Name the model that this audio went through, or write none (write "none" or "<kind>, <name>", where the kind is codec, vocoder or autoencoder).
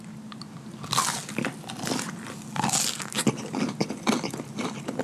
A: none